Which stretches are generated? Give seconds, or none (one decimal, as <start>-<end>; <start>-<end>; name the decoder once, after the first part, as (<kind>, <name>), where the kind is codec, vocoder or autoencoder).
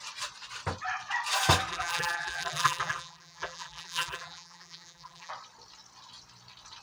1.7-5.3 (vocoder, BigVGAN v2)